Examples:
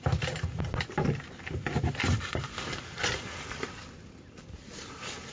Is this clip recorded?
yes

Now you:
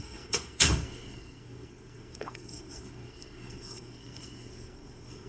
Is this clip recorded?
no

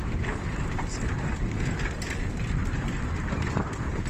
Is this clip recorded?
no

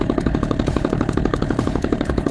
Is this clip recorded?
no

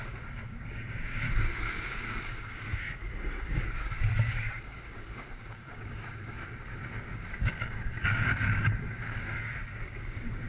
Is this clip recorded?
no